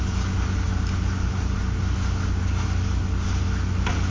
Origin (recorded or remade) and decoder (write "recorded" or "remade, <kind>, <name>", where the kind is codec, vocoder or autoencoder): recorded